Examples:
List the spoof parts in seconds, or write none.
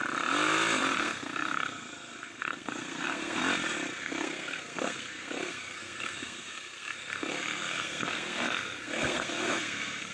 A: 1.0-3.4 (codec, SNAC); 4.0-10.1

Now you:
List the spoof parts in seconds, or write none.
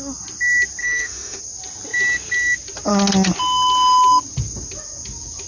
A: 0.8-1.4 (autoencoder, DAC-VAE)